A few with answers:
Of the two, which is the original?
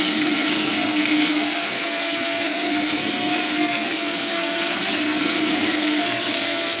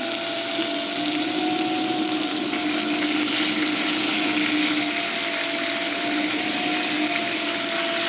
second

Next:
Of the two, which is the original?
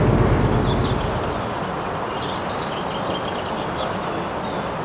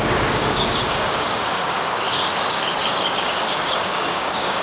first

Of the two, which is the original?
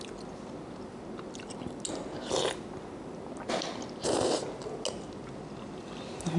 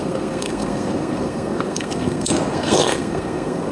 first